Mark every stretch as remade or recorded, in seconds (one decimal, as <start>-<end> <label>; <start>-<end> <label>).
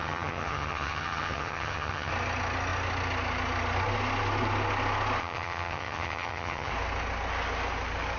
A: 0.0-2.1 remade; 2.1-5.2 recorded; 5.2-6.7 remade; 6.7-8.2 recorded